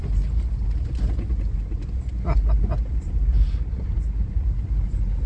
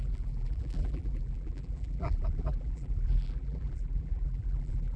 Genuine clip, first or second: first